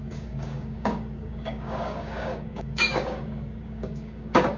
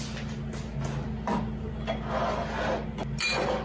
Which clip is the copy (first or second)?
first